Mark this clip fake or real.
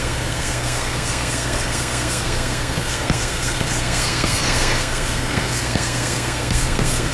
fake